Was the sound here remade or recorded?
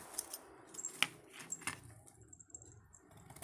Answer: recorded